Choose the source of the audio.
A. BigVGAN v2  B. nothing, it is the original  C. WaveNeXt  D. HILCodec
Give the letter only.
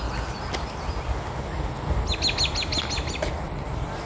B